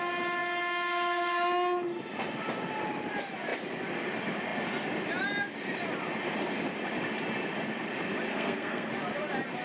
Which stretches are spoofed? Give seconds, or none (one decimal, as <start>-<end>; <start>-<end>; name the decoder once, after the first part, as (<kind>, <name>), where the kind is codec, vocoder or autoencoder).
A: 8.3-8.9 (codec, SNAC)

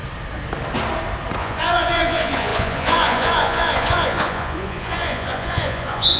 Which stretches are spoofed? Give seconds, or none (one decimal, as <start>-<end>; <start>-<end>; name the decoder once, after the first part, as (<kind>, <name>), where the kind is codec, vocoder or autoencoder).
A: 1.4-6.2 (vocoder, Vocos)

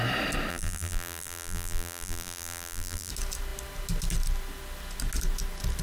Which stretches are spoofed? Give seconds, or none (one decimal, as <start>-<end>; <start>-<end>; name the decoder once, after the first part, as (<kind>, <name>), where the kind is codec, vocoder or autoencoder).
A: 0.5-3.1 (vocoder, BigVGAN v2)

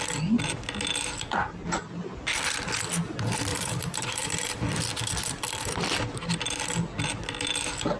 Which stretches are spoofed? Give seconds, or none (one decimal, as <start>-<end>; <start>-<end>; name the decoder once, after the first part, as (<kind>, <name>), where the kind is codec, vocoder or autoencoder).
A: 3.5-4.5 (vocoder, BigVGAN v2)

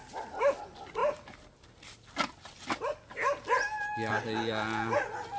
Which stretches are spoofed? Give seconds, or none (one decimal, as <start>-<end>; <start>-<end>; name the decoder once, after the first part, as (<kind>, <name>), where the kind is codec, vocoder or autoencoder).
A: none

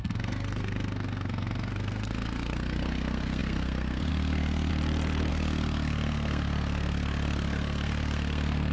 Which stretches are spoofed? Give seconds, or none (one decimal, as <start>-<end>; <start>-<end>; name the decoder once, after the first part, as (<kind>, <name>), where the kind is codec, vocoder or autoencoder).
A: 0.0-4.7 (codec, SNAC); 5.3-8.7

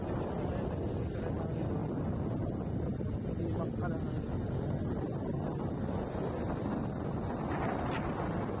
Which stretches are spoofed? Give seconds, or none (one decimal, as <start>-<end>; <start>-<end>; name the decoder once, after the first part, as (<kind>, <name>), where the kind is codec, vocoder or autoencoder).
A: none

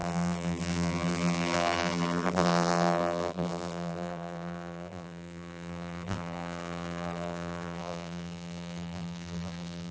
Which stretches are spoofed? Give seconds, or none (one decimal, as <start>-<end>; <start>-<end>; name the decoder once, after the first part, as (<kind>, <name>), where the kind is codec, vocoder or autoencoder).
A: 0.0-9.9 (vocoder, BigVGAN v2)